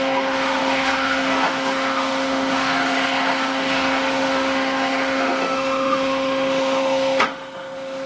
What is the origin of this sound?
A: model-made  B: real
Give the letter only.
A